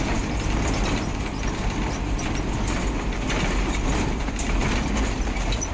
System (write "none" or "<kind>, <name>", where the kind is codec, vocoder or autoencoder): none